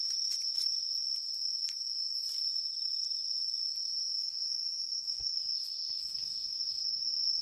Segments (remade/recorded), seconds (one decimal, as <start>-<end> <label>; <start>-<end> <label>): 0.0-4.2 recorded; 4.2-7.4 remade